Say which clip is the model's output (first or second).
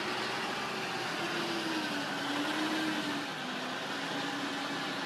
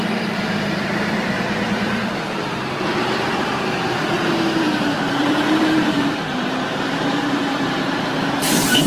second